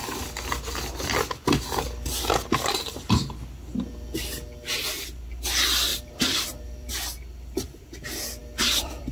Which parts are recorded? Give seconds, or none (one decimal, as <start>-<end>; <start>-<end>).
0.0-5.9; 6.9-8.4